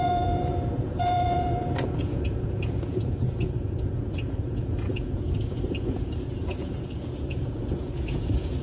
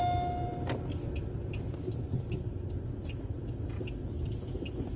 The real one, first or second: second